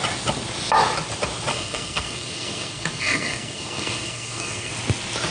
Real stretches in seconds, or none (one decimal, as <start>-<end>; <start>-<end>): 0.0-1.5; 4.7-5.3